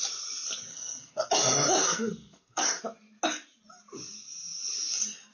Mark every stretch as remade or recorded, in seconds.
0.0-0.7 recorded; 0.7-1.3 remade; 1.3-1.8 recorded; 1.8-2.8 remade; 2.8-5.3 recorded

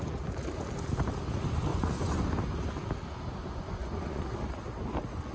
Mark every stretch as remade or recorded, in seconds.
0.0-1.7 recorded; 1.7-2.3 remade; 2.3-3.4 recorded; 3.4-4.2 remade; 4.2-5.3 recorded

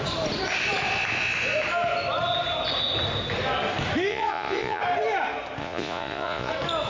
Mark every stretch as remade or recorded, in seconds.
0.0-4.1 recorded; 4.1-4.8 remade; 4.8-5.6 recorded; 5.6-6.5 remade; 6.5-6.9 recorded

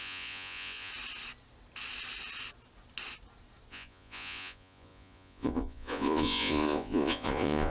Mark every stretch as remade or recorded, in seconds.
0.0-0.9 remade; 0.9-3.7 recorded; 3.7-7.7 remade

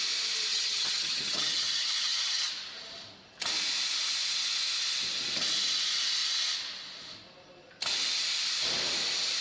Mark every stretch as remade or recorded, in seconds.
0.0-0.5 recorded; 0.5-2.5 remade; 2.5-9.4 recorded

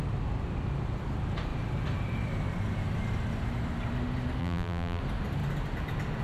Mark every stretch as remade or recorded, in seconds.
0.0-4.4 recorded; 4.4-5.0 remade; 5.0-6.2 recorded